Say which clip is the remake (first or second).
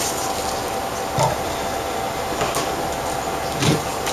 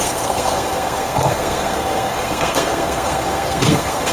second